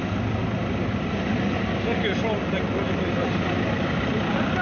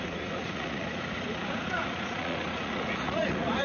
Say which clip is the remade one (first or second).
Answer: second